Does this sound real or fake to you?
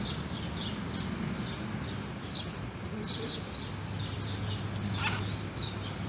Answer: real